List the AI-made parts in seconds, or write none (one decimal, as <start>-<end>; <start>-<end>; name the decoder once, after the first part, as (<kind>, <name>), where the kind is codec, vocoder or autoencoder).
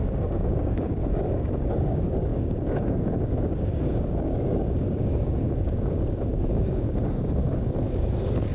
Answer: 0.0-8.5 (codec, DAC)